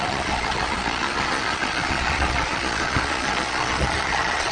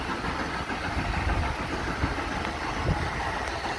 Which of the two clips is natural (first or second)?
second